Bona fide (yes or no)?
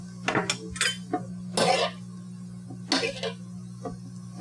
yes